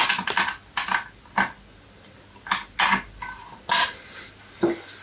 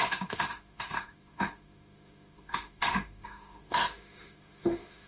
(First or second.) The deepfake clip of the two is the second